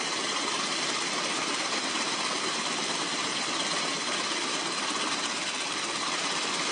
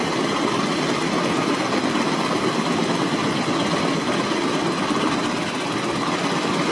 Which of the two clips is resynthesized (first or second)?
first